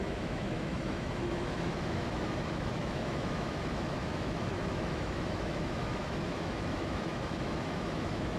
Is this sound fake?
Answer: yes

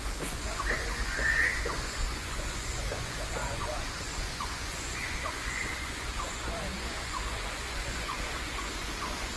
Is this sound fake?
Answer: yes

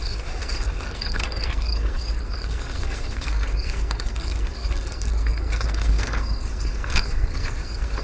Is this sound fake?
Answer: yes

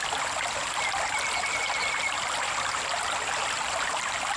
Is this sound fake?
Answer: no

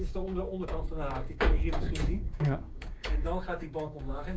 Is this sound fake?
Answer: yes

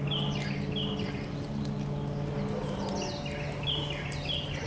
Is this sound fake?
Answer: no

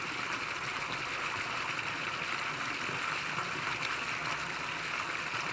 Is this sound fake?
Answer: no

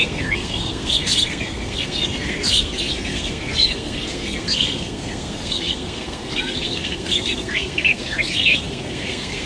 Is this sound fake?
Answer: yes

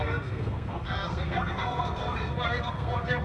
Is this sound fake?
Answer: yes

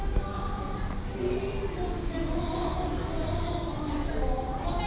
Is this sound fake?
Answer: no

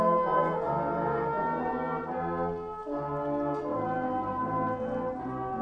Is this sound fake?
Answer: no